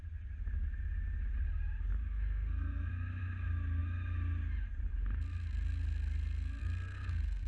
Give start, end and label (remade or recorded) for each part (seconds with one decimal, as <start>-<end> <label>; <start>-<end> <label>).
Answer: 0.0-2.1 recorded; 2.1-2.9 remade; 2.9-6.6 recorded; 6.6-7.5 remade